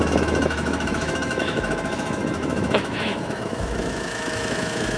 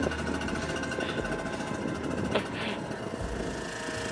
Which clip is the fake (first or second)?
first